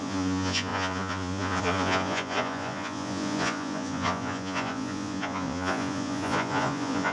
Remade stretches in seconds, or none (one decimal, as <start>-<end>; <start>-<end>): 0.0-7.1

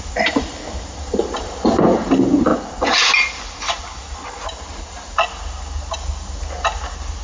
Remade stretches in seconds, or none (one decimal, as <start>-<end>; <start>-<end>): none

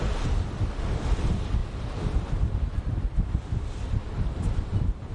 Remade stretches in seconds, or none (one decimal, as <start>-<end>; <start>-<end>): none

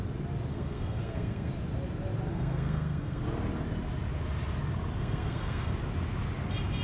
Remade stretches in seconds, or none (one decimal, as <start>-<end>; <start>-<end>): 0.5-1.5; 2.3-3.2; 5.0-5.7

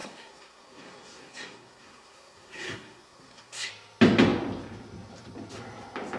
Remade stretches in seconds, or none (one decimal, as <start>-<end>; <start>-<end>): 0.0-3.7